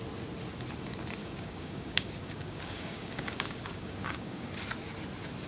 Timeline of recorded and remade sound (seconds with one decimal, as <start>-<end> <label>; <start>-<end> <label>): 0.0-1.2 recorded; 1.2-4.5 remade; 4.5-5.5 recorded